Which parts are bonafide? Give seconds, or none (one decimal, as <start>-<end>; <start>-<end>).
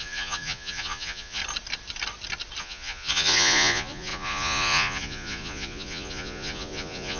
1.4-2.6